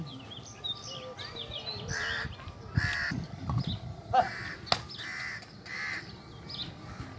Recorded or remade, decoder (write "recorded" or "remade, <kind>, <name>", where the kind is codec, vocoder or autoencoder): recorded